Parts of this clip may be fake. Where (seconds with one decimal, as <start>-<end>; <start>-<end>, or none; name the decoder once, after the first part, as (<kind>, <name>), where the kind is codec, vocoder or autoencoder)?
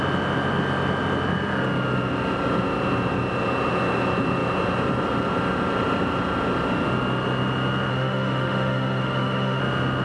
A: 7.9-9.6 (autoencoder, DAC-VAE)